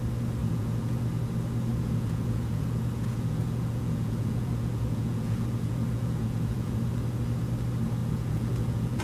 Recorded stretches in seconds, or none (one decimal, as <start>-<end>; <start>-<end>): 0.0-0.4; 1.0-1.7; 6.9-8.0